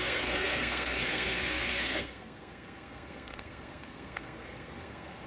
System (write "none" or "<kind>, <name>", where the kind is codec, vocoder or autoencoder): codec, SNAC